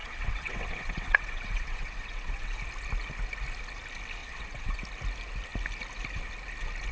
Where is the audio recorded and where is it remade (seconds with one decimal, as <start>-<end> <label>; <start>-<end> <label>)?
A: 0.0-2.6 remade; 2.6-4.2 recorded; 4.2-4.8 remade; 4.8-6.9 recorded